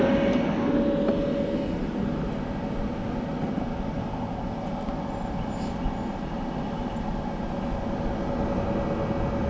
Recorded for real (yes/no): yes